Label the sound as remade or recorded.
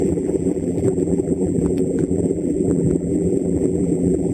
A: remade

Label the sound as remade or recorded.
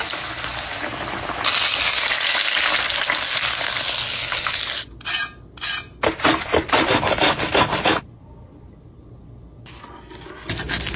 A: recorded